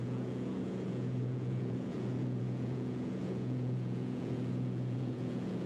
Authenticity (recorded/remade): remade